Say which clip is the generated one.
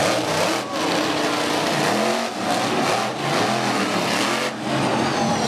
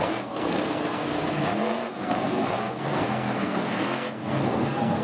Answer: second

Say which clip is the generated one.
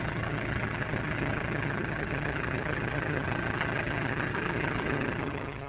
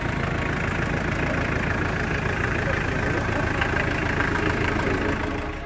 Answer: first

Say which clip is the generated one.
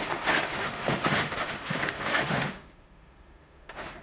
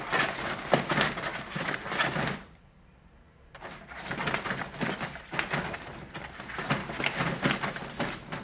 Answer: first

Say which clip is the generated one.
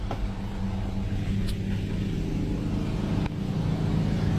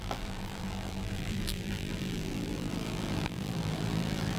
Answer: second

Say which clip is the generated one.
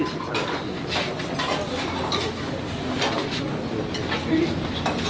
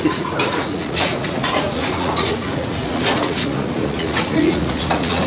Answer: second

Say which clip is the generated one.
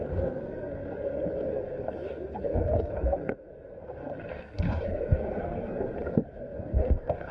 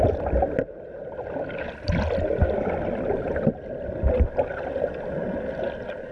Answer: first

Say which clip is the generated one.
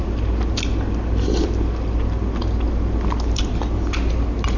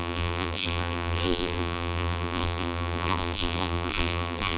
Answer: second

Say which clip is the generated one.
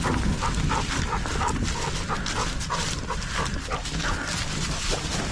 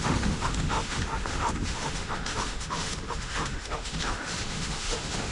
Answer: second